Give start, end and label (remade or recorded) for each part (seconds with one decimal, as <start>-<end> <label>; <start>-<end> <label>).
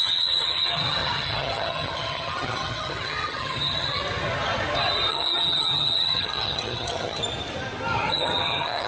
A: 0.0-4.0 remade; 4.0-5.1 recorded; 5.1-7.2 remade; 7.2-8.1 recorded; 8.1-8.9 remade